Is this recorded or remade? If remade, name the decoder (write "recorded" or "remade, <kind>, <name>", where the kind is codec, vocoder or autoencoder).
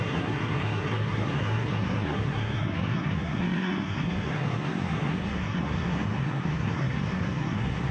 remade, codec, SNAC